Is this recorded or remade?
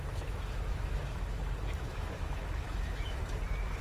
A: remade